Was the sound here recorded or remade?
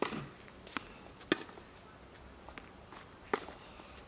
recorded